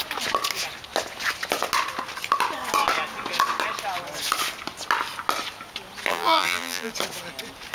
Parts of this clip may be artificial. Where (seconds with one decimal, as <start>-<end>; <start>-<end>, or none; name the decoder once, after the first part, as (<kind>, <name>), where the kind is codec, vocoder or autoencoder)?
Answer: 6.1-6.9 (vocoder, BigVGAN v2)